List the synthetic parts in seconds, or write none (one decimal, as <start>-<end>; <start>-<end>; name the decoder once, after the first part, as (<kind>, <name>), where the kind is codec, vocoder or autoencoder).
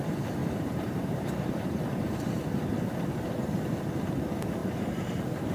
0.4-2.4 (vocoder, BigVGAN v2); 4.6-5.5